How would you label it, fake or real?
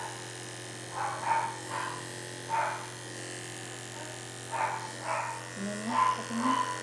real